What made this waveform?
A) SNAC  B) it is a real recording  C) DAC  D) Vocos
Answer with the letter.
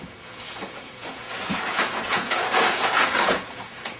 D